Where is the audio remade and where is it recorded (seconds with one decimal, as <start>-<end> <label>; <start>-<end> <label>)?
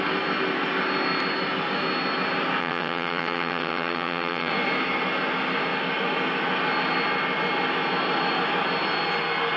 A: 0.0-2.6 recorded; 2.6-4.5 remade; 4.5-9.6 recorded